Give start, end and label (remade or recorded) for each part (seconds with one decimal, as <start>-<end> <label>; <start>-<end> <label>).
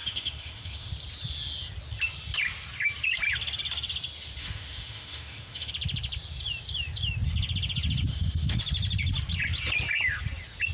0.0-0.9 remade; 0.9-4.4 recorded; 4.4-5.7 remade; 5.7-8.1 recorded; 8.1-8.6 remade; 8.6-10.7 recorded